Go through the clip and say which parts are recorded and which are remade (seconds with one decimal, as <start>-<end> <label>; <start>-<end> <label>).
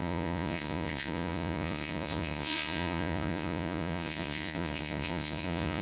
0.0-5.8 remade